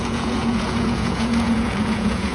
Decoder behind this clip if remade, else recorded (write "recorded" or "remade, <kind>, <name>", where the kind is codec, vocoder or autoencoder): remade, vocoder, Vocos